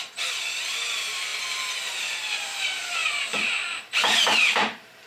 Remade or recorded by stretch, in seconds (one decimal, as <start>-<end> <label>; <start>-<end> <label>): 0.0-3.0 remade; 3.0-3.8 recorded; 3.8-5.1 remade